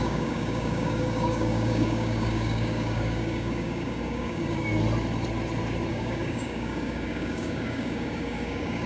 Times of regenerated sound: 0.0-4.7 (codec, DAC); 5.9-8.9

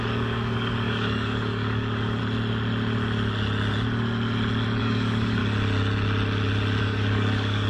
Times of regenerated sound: 0.0-2.2 (codec, DAC); 4.8-5.4; 6.8-7.7

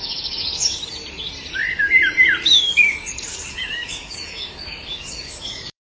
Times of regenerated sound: 0.0-0.8 (codec, DAC); 2.4-5.9

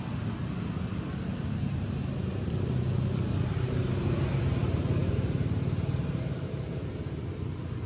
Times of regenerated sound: none

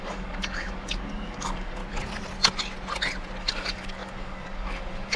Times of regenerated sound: 0.0-1.8 (codec, DAC); 3.4-5.2

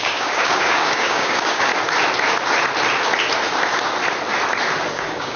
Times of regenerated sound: 0.0-1.7 (codec, DAC); 4.9-5.4

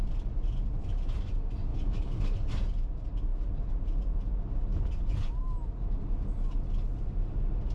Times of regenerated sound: 1.7-2.2 (codec, DAC)